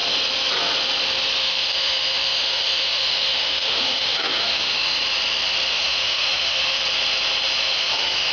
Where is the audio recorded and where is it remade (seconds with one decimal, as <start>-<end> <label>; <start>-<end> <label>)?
0.0-1.4 recorded; 1.4-5.0 remade; 5.0-5.7 recorded; 5.7-6.8 remade; 6.8-7.6 recorded; 7.6-8.3 remade